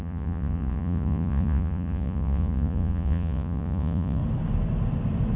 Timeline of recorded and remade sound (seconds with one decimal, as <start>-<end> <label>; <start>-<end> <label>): 0.0-4.2 remade; 4.2-5.4 recorded